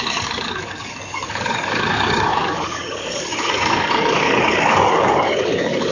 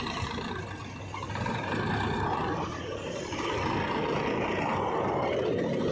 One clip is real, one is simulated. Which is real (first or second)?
second